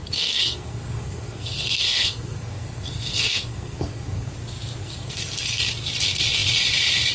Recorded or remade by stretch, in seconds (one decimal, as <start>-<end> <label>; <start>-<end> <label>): 0.0-4.3 remade; 4.3-4.8 recorded; 4.8-5.6 remade; 5.6-7.1 recorded